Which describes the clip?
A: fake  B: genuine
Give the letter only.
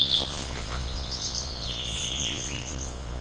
A